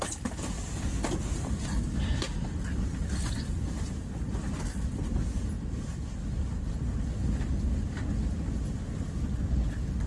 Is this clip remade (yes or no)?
no